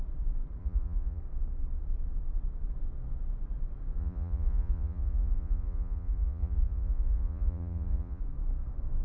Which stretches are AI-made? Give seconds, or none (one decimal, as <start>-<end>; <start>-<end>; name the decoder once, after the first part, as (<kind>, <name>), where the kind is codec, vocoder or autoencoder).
0.6-1.2 (vocoder, Vocos); 4.0-8.2